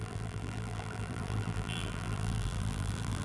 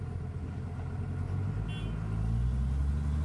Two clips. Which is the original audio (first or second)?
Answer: second